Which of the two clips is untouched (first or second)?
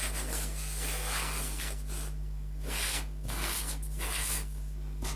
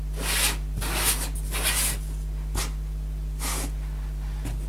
second